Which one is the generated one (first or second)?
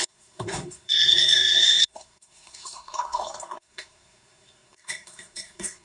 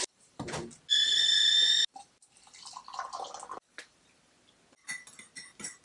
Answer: first